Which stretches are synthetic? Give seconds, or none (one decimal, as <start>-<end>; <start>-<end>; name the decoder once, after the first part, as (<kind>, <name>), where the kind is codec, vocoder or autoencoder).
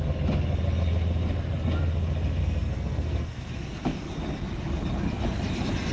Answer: 2.4-3.5 (codec, SNAC)